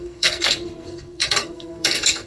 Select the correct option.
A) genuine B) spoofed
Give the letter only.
B